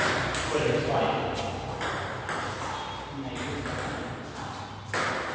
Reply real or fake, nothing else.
real